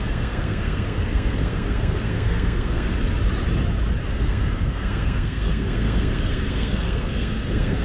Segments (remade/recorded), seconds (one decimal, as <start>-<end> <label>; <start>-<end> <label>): 0.0-2.9 remade; 2.9-4.1 recorded; 4.1-7.8 remade